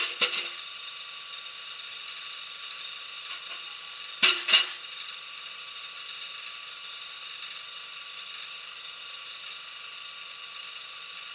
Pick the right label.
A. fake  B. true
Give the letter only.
B